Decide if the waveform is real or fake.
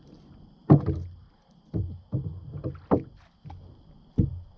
real